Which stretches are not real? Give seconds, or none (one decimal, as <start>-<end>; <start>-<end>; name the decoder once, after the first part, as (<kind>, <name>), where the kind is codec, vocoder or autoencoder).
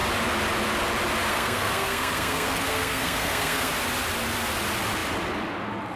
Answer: 1.3-3.7 (codec, SNAC)